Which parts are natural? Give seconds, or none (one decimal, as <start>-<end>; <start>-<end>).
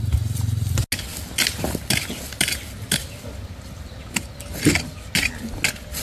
0.0-6.0